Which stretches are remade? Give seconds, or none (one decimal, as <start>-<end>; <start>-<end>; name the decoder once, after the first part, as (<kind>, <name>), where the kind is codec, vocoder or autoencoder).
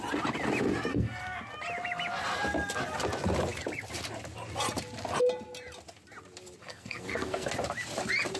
0.9-1.4 (codec, SNAC); 6.6-7.5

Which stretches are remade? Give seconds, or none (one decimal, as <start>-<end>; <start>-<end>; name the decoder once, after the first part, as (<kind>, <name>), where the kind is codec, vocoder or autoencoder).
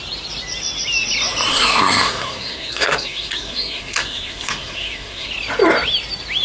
1.5-5.3 (codec, SNAC)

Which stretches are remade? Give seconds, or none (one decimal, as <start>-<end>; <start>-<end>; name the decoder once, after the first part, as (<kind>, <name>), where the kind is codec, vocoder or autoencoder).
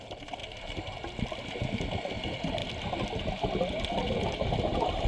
none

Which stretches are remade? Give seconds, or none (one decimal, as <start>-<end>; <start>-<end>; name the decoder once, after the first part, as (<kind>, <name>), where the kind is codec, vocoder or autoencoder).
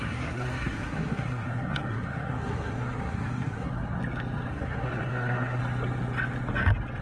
0.0-4.0 (codec, SNAC); 4.5-5.6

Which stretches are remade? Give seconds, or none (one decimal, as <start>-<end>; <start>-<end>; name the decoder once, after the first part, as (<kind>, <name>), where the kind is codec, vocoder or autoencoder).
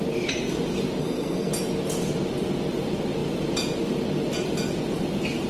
1.0-1.5 (codec, SNAC)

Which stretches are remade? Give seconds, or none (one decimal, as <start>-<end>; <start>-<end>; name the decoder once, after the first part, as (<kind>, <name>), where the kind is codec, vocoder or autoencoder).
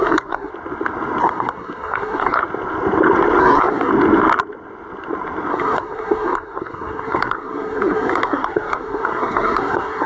0.0-0.5 (codec, SNAC); 1.2-2.4; 3.4-3.9; 5.5-10.1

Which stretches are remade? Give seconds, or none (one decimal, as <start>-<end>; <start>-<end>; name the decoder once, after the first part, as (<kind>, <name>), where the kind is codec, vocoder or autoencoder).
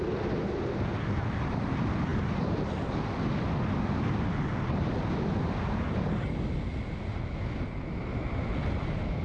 none